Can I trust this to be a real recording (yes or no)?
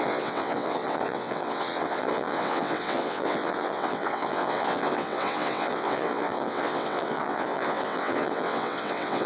no